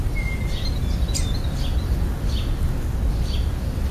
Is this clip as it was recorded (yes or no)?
yes